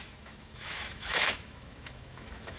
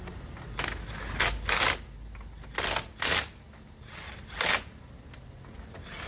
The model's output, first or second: first